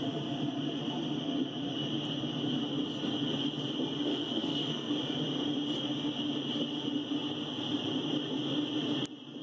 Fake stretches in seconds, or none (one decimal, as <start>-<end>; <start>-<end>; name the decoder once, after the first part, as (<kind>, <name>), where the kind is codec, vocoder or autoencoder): 4.1-4.9 (codec, SNAC)